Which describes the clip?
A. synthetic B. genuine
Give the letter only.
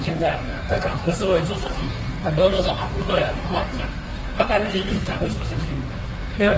A